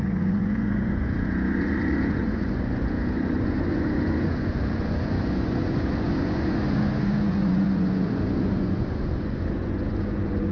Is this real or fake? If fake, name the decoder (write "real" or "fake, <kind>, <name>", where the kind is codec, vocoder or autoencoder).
fake, vocoder, Vocos